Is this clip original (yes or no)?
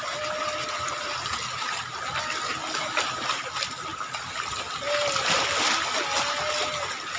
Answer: yes